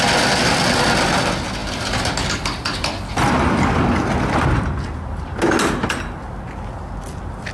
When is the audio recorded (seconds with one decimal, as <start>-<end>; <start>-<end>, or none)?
0.0-7.5